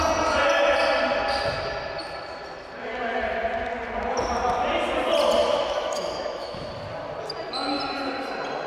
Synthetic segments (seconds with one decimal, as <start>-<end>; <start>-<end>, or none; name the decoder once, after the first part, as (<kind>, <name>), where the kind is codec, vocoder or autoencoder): 5.4-6.7 (autoencoder, DAC-VAE)